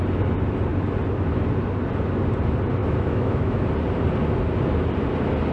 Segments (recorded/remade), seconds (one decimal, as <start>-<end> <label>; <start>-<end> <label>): 0.0-2.8 recorded; 2.8-3.6 remade; 3.6-5.5 recorded